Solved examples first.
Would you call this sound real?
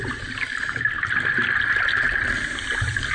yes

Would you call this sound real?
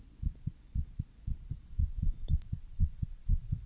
no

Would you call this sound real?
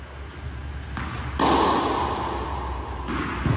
yes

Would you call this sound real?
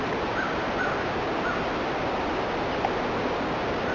yes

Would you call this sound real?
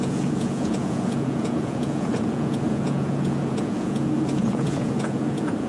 no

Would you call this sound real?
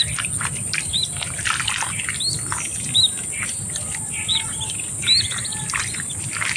yes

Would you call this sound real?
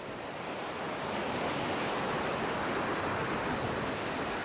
yes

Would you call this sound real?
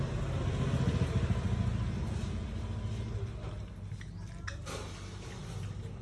yes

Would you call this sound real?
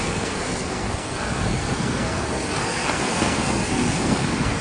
no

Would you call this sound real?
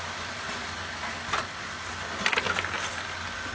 yes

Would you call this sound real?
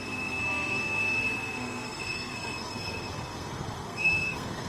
no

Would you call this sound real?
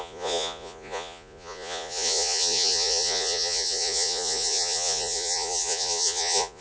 no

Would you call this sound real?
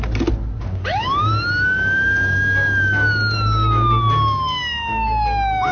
yes